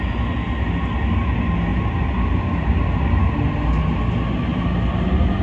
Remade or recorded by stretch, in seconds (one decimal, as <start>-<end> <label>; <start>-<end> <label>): 0.0-5.4 recorded